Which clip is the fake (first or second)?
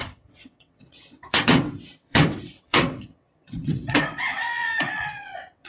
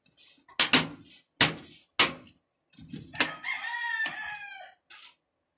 first